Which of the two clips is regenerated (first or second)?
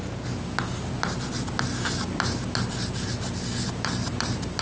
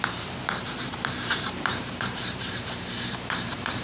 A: second